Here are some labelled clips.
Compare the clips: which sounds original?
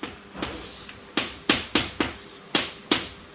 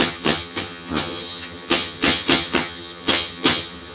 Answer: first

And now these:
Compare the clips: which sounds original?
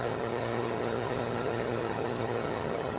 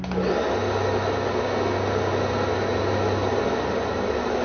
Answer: second